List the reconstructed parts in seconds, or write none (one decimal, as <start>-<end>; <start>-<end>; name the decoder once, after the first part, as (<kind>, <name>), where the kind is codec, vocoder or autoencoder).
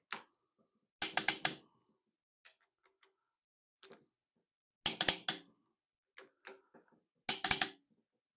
none